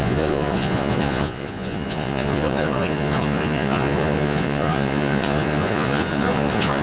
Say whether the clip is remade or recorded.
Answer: remade